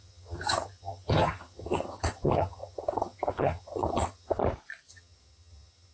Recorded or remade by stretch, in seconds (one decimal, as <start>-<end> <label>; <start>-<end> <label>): 0.0-4.4 remade; 4.4-4.9 recorded; 4.9-5.9 remade